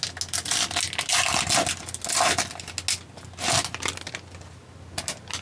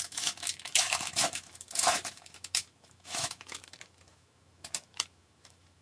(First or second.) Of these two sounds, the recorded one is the first